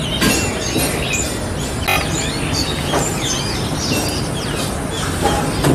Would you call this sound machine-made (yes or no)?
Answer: no